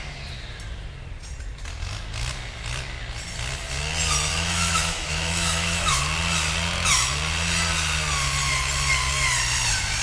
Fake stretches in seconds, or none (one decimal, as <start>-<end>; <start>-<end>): 4.3-6.0